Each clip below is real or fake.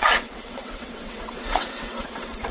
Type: fake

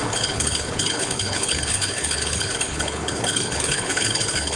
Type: fake